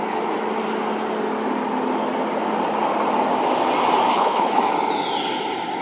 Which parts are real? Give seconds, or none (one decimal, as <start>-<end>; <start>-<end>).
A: 0.0-4.1; 4.6-5.8